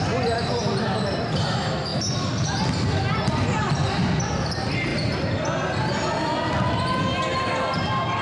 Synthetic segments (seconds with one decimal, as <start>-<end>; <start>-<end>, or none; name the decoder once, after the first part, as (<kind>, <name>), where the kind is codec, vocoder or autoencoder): none